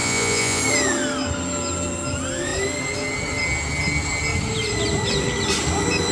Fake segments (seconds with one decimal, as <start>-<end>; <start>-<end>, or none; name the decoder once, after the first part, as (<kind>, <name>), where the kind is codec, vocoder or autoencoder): 0.0-0.6 (vocoder, Vocos)